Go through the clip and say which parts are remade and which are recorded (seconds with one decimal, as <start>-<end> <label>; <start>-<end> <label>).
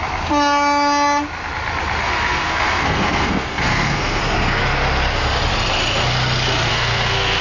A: 0.0-2.0 recorded; 2.0-4.2 remade; 4.2-6.7 recorded; 6.7-7.4 remade